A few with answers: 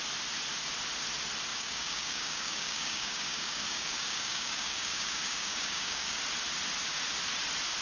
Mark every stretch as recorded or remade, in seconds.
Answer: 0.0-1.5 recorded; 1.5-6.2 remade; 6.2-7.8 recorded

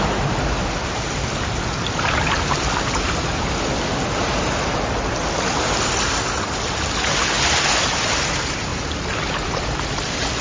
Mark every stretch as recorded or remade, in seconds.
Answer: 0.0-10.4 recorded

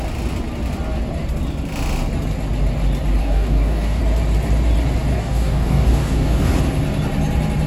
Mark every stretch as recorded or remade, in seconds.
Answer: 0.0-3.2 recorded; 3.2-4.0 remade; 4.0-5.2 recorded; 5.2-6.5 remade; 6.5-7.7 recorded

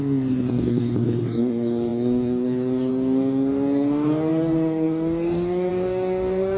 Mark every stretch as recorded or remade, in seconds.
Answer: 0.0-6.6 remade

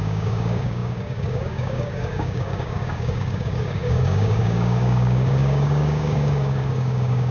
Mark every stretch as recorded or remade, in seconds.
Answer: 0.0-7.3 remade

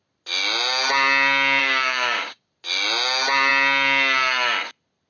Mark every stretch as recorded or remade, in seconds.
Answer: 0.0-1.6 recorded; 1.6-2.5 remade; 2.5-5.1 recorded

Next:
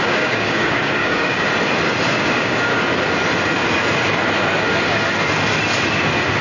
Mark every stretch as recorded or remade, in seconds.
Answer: 0.0-1.5 remade; 1.5-2.2 recorded; 2.2-2.7 remade; 2.7-6.4 recorded

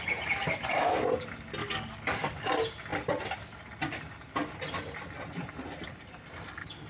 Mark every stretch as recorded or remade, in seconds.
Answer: 0.0-1.6 recorded; 1.6-2.5 remade; 2.5-6.9 recorded